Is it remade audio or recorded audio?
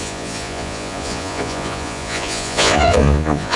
remade